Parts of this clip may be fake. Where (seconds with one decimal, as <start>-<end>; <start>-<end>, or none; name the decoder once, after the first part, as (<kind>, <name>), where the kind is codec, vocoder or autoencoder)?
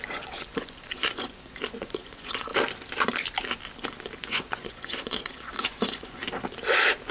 0.0-2.5 (vocoder, Vocos); 4.2-6.2